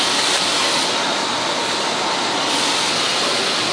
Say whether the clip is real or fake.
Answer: real